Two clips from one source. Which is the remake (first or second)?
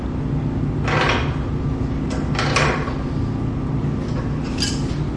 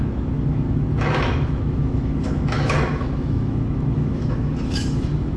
second